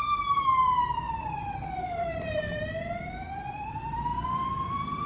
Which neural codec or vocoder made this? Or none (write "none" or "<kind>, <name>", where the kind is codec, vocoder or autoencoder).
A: vocoder, BigVGAN v2